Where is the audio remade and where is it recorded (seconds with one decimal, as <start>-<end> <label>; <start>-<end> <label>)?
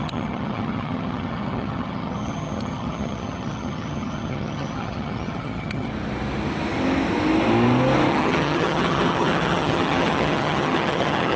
0.0-5.9 remade; 5.9-8.1 recorded; 8.1-11.4 remade